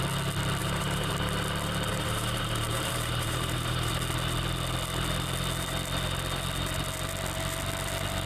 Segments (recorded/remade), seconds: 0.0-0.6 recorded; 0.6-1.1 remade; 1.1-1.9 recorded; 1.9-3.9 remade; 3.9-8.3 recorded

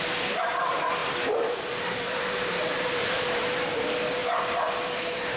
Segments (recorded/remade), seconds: 0.0-1.0 recorded; 1.0-3.7 remade; 3.7-4.2 recorded; 4.2-5.4 remade

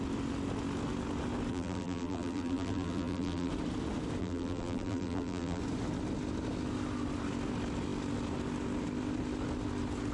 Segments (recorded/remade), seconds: 0.0-1.5 recorded; 1.5-3.5 remade; 3.5-4.2 recorded; 4.2-5.6 remade; 5.6-10.1 recorded